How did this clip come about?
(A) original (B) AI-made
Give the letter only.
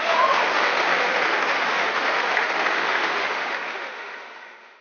B